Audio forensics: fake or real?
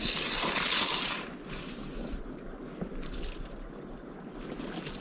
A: real